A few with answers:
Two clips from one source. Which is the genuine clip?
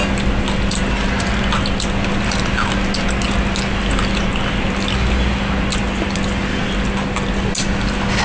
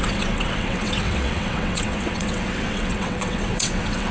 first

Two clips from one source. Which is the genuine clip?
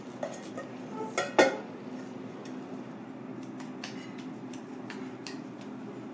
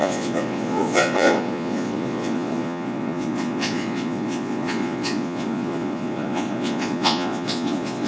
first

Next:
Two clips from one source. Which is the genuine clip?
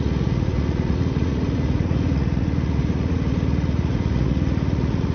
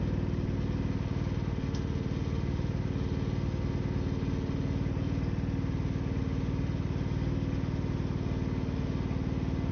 second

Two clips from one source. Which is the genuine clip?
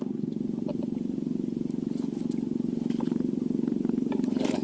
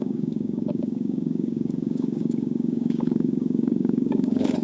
first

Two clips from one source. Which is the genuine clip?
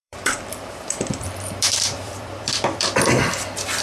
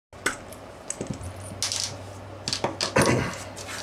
second